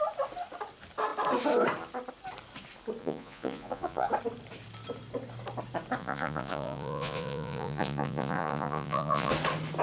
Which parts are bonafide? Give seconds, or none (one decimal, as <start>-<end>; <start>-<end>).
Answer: 0.0-3.0; 4.1-6.0; 9.3-9.8